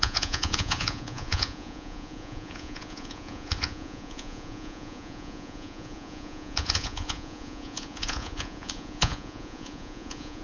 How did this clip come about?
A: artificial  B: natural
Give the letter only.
A